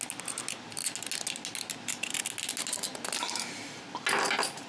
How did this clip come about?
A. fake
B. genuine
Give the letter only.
B